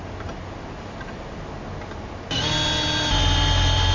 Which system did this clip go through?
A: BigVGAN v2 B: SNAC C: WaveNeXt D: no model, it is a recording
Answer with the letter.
D